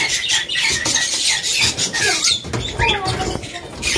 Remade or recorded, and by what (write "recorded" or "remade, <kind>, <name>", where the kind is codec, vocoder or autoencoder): recorded